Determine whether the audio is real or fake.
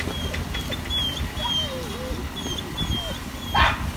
real